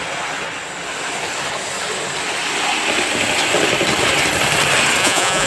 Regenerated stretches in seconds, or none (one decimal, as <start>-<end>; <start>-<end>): 5.0-5.5